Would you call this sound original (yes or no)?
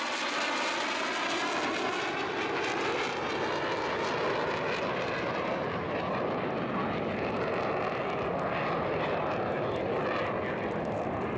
yes